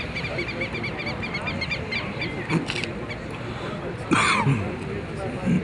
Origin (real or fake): real